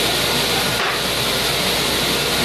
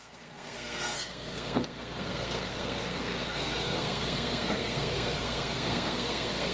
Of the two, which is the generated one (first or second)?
second